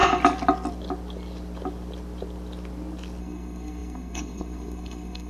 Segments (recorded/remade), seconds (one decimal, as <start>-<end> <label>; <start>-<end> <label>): 0.0-3.2 recorded; 3.2-5.3 remade